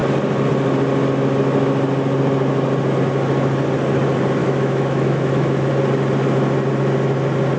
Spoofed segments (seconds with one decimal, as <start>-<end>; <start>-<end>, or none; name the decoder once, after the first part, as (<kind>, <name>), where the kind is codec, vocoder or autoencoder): 4.4-5.7 (autoencoder, DAC-VAE)

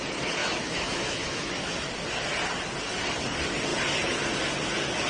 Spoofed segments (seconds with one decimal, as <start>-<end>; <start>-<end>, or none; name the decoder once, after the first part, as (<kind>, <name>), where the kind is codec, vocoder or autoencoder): 0.4-1.9 (autoencoder, DAC-VAE)

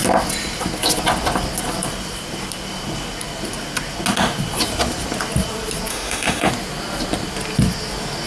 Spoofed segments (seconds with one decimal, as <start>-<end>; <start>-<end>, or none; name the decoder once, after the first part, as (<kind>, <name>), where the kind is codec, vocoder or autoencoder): 5.9-6.5 (autoencoder, DAC-VAE)

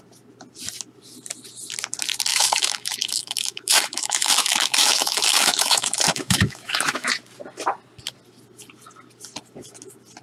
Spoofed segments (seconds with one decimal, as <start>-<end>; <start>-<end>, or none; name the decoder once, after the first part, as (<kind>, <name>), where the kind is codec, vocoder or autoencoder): 2.3-7.1 (autoencoder, DAC-VAE)

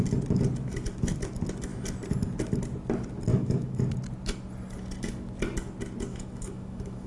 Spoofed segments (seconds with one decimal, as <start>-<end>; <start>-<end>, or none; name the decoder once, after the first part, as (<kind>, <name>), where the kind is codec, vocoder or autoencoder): 3.3-3.8 (autoencoder, DAC-VAE); 6.1-7.1

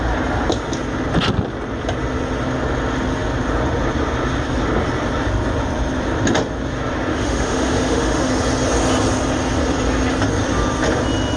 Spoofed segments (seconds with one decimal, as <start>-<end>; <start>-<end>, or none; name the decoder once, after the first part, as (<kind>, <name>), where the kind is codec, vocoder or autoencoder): 7.1-8.3 (autoencoder, DAC-VAE)